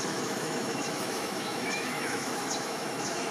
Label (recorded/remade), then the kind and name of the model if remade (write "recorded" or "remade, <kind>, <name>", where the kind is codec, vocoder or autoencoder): remade, autoencoder, DAC-VAE